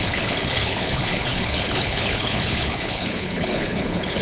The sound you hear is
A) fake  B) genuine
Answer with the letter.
A